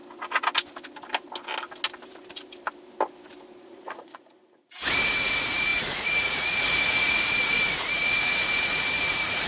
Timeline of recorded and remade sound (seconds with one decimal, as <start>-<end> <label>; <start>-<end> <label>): 0.0-3.6 recorded; 3.6-9.5 remade